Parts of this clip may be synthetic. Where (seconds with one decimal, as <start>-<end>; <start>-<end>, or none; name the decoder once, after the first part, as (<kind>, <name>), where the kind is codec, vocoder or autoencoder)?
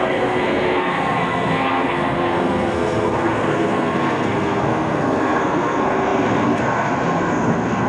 0.0-7.9 (codec, SNAC)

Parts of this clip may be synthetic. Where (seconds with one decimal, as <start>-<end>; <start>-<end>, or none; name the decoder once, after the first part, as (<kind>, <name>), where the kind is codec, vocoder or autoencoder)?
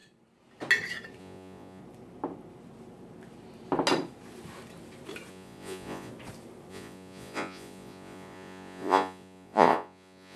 1.2-1.8 (vocoder, Vocos); 5.3-6.1; 6.7-10.4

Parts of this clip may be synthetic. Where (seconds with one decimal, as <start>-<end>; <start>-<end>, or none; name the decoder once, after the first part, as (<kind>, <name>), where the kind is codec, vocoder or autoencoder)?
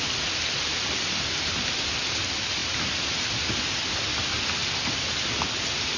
none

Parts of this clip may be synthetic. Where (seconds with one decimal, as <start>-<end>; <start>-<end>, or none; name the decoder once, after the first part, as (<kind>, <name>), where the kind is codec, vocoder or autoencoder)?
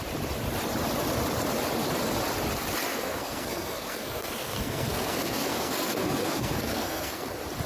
2.9-7.3 (codec, SNAC)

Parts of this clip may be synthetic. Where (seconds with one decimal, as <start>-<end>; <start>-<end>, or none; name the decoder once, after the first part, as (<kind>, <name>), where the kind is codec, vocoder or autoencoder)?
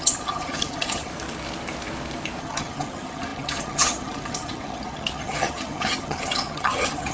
0.0-1.1 (vocoder, HiFi-GAN); 2.4-7.1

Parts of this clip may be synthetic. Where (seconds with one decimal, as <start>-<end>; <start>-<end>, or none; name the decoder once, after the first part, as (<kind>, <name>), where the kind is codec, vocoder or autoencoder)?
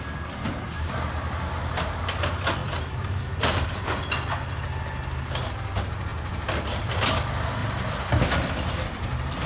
2.6-4.0 (vocoder, BigVGAN v2); 6.1-6.8; 7.6-9.5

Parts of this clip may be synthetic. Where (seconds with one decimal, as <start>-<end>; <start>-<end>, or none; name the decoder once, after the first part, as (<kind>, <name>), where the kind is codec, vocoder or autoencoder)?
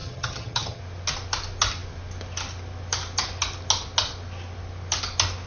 0.0-0.8 (vocoder, HiFi-GAN)